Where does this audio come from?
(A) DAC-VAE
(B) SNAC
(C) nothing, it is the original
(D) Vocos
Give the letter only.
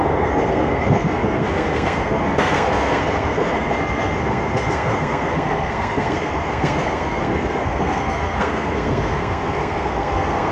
B